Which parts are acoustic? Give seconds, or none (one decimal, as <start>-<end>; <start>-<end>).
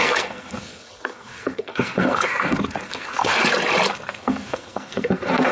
3.4-3.9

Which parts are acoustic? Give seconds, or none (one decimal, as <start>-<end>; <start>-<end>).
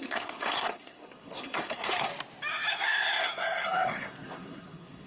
2.1-2.7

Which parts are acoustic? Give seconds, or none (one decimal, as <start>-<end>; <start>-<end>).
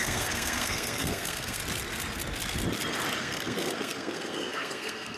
1.6-3.2